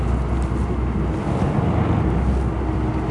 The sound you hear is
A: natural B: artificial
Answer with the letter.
A